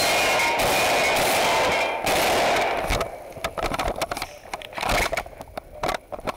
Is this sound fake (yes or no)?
no